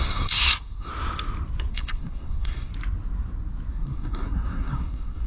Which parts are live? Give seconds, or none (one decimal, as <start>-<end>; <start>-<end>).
0.9-1.7; 2.7-3.7